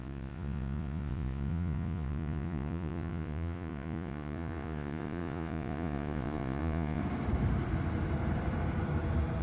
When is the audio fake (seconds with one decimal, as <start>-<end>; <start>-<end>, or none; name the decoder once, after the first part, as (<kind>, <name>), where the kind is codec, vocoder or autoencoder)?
0.0-7.0 (vocoder, Vocos)